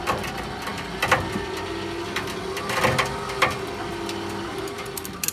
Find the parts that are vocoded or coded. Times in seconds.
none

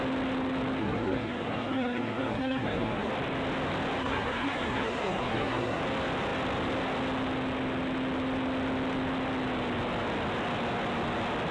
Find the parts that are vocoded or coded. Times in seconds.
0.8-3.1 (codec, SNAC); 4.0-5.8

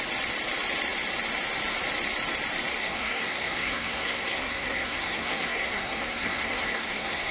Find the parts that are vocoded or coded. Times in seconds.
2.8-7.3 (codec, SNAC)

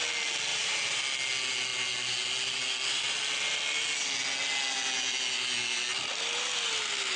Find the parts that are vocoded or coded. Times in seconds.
0.5-1.0 (vocoder, BigVGAN v2)